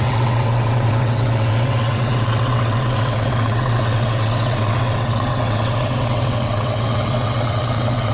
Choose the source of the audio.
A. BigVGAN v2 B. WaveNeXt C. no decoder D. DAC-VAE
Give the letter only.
B